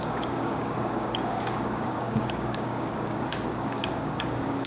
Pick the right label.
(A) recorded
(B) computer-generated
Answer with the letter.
B